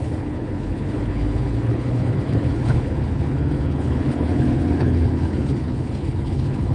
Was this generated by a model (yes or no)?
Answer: yes